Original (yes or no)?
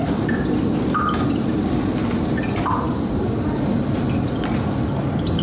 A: yes